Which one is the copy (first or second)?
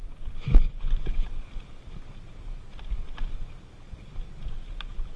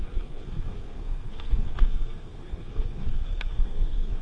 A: second